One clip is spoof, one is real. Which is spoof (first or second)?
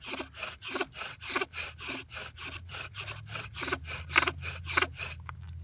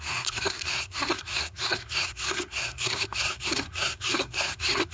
second